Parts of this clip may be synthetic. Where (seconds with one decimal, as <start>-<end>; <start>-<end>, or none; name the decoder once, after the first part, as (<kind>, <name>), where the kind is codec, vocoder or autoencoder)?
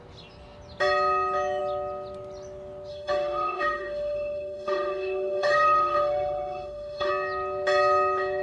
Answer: 2.9-7.1 (autoencoder, DAC-VAE)